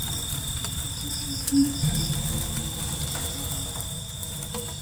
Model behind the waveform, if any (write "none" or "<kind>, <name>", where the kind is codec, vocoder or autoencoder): vocoder, BigVGAN v2